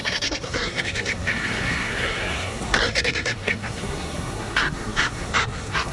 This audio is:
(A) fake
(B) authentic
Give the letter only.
A